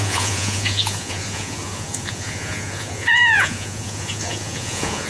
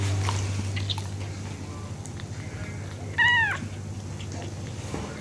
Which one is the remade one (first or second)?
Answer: first